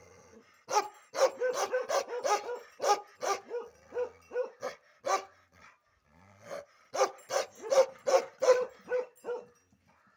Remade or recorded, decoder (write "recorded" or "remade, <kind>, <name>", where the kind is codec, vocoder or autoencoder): recorded